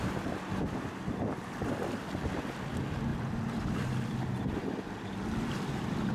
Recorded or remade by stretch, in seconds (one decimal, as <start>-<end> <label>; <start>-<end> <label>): 0.0-3.1 recorded; 3.1-4.1 remade; 4.1-6.1 recorded